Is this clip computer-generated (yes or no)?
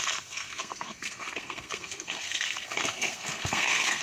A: yes